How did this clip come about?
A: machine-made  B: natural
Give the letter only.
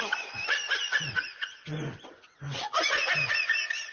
A